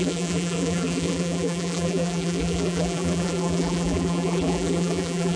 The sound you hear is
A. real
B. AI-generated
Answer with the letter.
B